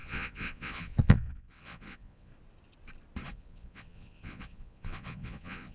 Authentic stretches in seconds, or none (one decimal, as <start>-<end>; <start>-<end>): 2.3-3.3